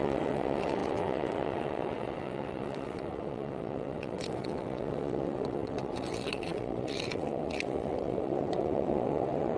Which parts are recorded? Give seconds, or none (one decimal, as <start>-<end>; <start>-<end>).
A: none